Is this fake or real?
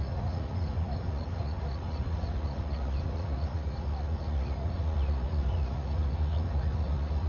fake